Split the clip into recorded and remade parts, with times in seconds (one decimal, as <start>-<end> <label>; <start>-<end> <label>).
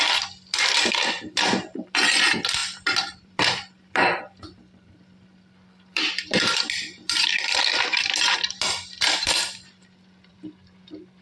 0.0-11.2 remade